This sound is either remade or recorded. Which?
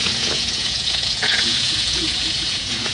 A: remade